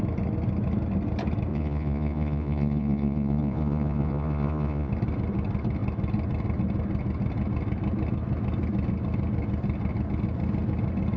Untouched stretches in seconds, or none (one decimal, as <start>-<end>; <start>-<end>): 0.0-1.5; 4.9-11.2